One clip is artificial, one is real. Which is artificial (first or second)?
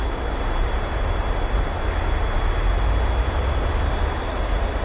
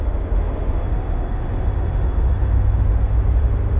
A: second